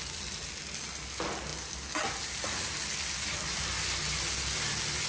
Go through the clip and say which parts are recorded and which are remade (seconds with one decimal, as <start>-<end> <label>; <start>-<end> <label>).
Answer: 0.0-5.1 recorded

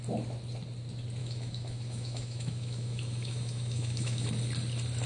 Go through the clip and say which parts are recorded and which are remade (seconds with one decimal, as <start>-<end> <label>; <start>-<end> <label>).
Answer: 0.0-1.2 recorded; 1.2-4.3 remade; 4.3-5.1 recorded

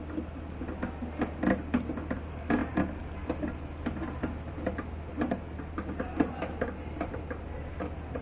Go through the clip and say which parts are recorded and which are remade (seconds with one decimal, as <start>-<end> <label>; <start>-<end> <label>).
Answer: 0.0-8.2 recorded